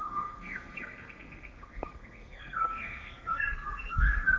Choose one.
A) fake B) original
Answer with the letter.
A